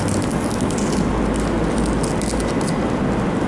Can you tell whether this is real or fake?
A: real